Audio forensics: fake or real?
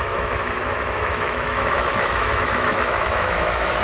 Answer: fake